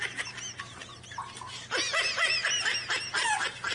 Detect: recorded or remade recorded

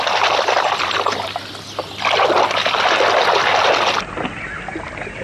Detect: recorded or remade recorded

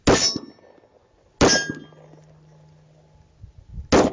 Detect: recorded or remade recorded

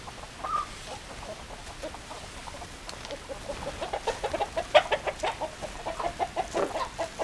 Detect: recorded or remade recorded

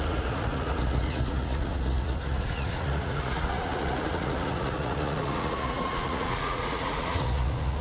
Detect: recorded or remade remade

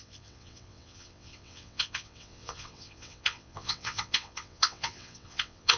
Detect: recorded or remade remade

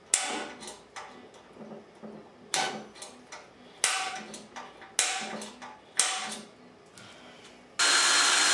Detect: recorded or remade recorded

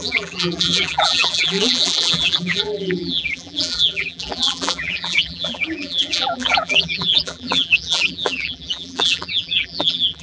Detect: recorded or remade remade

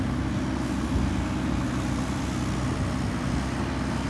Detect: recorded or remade recorded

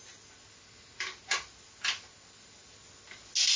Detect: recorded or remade recorded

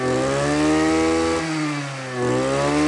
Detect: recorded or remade recorded